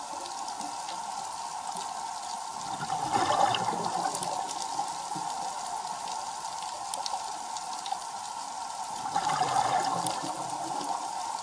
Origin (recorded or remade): recorded